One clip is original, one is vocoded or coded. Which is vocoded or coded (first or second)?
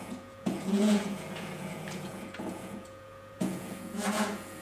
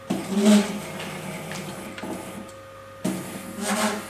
first